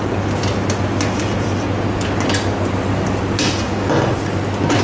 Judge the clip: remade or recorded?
recorded